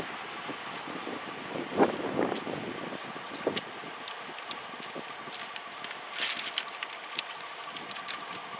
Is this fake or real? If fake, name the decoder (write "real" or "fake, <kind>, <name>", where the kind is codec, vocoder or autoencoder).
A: real